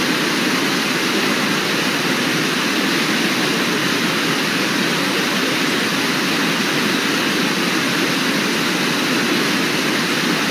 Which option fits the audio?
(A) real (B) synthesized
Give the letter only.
A